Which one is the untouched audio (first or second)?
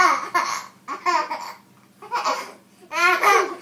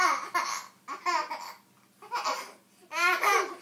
second